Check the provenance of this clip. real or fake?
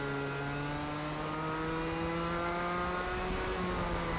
real